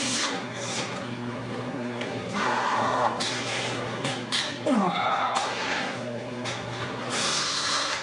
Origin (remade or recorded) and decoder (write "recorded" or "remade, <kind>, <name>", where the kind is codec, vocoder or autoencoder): remade, codec, SNAC